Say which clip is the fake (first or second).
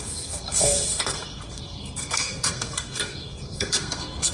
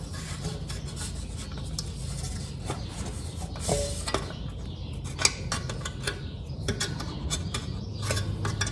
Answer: first